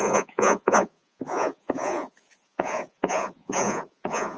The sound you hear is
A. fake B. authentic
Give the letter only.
A